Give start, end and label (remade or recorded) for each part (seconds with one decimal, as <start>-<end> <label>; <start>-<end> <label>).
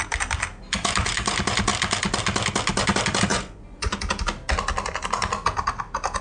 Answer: 0.0-3.3 recorded; 3.3-4.0 remade; 4.0-6.2 recorded